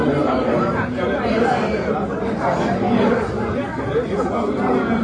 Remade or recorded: recorded